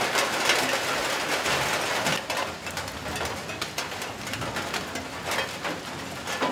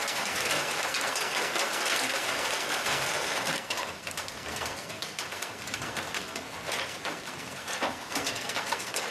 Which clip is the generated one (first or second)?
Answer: second